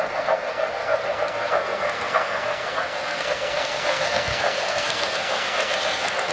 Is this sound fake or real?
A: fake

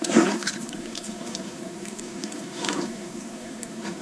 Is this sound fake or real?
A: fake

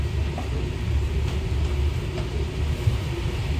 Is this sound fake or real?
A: real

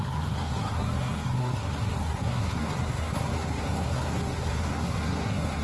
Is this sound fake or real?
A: fake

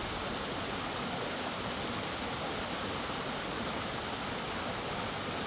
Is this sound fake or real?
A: real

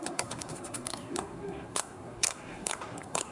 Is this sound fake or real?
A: fake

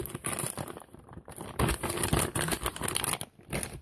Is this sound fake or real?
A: real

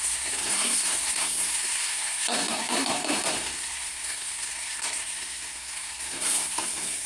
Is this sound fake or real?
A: fake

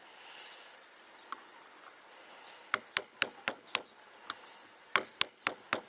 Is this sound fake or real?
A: real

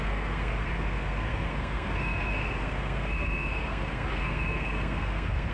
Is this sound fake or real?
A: fake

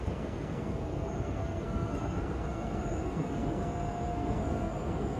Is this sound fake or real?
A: fake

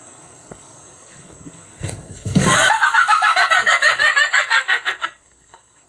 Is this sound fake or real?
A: fake